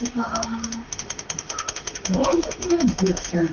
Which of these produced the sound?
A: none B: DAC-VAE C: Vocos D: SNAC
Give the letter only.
B